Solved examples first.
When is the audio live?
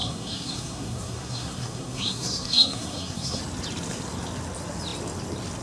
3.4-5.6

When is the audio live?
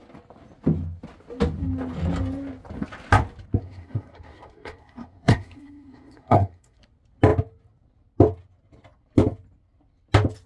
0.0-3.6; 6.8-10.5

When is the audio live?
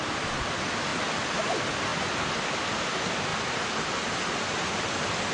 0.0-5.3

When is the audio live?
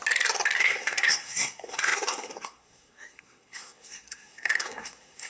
0.0-0.6